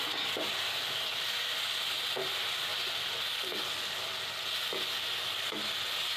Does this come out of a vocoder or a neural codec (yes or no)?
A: no